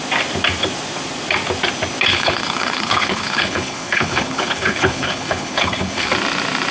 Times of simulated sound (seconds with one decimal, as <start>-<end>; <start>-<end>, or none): 2.1-6.1